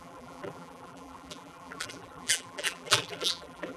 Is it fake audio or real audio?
fake